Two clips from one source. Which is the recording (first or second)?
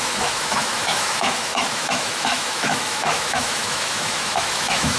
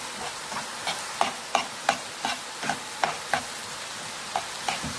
second